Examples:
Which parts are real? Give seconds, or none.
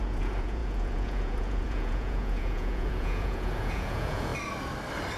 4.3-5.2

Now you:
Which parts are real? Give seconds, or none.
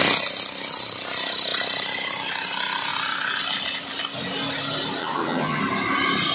0.0-5.0; 5.6-6.3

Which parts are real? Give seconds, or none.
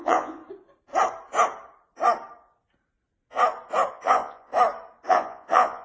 0.4-3.9; 4.5-5.1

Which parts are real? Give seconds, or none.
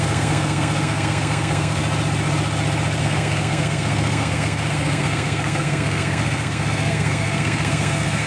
1.8-3.0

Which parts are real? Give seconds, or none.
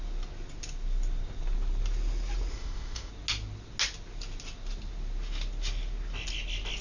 0.0-2.5; 3.1-6.8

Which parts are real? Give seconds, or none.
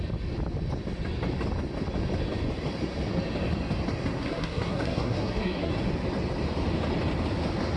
0.0-4.1; 5.7-7.8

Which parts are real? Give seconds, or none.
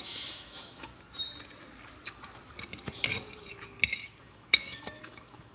0.9-4.2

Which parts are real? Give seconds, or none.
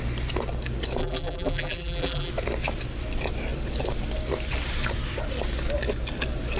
0.0-1.0; 2.3-6.6